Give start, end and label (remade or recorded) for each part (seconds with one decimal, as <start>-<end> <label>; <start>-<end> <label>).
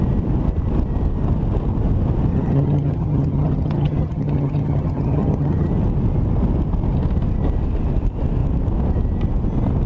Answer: 0.0-2.3 recorded; 2.3-5.7 remade; 5.7-9.9 recorded